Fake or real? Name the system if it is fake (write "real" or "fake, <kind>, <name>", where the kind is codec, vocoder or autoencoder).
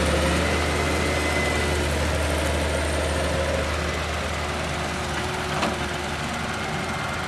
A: real